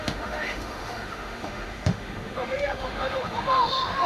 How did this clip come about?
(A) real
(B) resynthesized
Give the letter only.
B